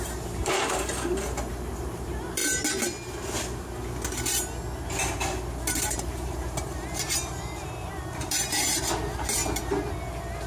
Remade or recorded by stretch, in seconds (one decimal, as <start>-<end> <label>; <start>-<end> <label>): 0.0-2.4 remade; 2.4-5.7 recorded; 5.7-9.4 remade; 9.4-10.5 recorded